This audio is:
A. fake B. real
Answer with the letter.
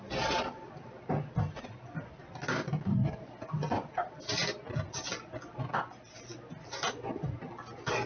B